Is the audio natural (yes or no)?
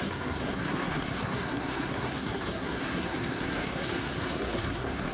no